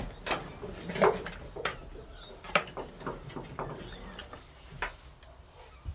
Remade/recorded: recorded